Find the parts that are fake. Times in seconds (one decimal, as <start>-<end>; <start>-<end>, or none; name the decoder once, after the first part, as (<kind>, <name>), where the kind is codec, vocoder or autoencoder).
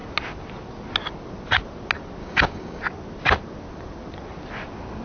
2.2-2.8 (codec, DAC)